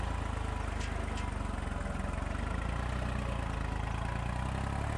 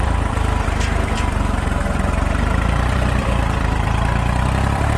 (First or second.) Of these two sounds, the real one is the first